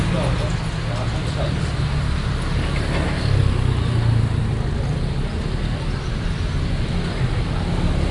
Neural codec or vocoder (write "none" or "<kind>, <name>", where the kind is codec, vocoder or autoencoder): none